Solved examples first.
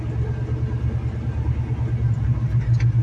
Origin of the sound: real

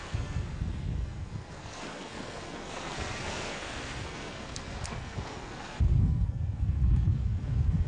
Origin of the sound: fake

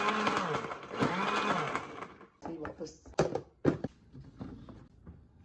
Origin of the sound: real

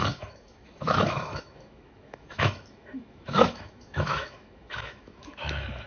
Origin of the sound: fake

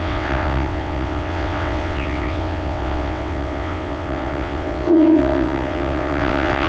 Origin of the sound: fake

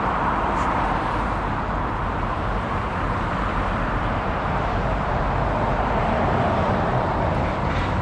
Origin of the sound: fake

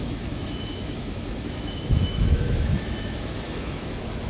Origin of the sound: fake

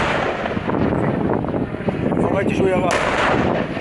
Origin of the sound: real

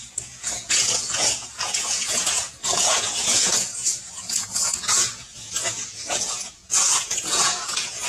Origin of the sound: fake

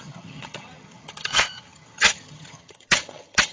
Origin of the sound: fake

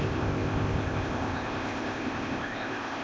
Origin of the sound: fake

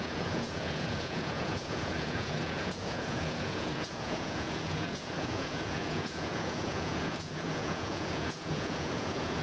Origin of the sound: fake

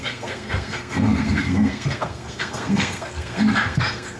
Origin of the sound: fake